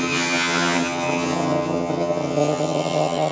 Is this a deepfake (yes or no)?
yes